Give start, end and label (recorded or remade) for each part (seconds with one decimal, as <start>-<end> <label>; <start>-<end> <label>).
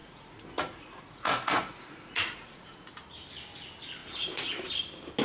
0.0-2.9 remade; 2.9-4.0 recorded; 4.0-4.7 remade; 4.7-5.2 recorded